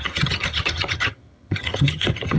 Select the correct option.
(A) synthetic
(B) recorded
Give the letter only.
A